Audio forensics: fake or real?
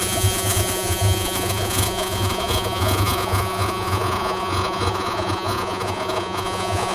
fake